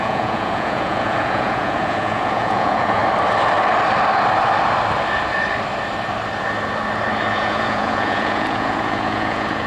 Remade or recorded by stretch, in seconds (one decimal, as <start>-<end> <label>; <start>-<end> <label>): 0.0-3.0 remade; 3.0-7.3 recorded; 7.3-9.7 remade